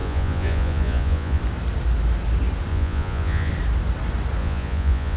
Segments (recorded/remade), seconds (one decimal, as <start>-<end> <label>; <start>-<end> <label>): 0.0-1.4 remade; 1.4-2.7 recorded; 2.7-3.5 remade; 3.5-4.4 recorded; 4.4-5.2 remade